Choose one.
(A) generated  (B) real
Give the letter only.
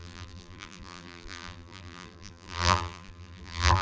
A